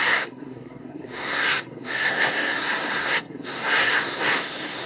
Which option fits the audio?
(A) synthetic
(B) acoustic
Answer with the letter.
A